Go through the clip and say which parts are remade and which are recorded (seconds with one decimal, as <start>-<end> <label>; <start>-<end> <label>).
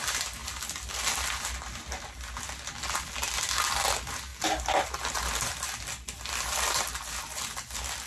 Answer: 0.0-8.1 recorded